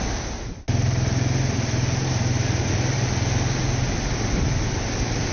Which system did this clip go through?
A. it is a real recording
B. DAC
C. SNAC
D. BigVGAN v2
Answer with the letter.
A